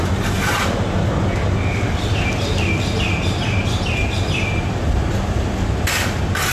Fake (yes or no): no